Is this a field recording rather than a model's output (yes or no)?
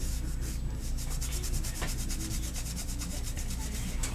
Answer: yes